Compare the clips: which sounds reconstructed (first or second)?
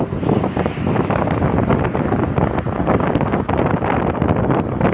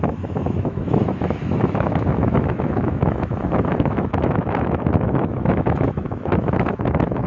second